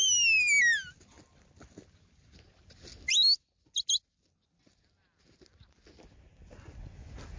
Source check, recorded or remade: recorded